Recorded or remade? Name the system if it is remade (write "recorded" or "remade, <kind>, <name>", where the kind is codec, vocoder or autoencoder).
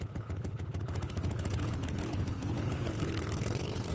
remade, codec, HILCodec